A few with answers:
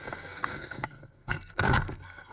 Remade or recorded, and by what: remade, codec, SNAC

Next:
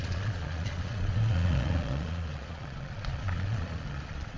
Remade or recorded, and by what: remade, vocoder, Vocos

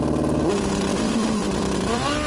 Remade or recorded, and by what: remade, vocoder, BigVGAN v2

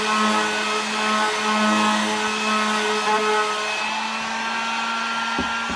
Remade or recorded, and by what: recorded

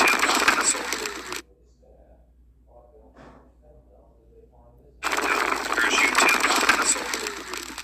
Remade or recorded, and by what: recorded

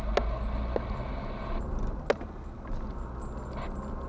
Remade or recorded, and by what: recorded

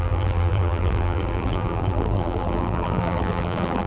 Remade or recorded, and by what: remade, vocoder, BigVGAN v2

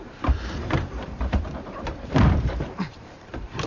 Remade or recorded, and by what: remade, vocoder, BigVGAN v2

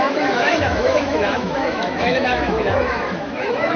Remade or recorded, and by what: remade, autoencoder, DAC-VAE